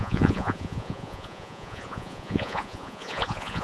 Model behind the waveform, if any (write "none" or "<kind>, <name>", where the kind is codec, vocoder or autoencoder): vocoder, Vocos